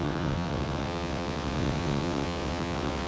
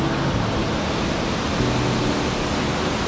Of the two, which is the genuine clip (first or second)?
second